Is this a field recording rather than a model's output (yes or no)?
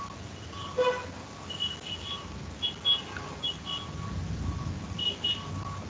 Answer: yes